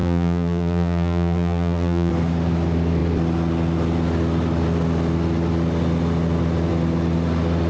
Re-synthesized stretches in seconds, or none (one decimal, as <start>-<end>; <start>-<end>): 0.0-2.1